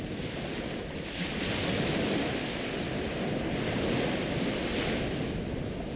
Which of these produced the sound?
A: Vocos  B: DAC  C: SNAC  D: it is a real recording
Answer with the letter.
D